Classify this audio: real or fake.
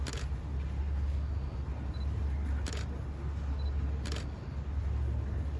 real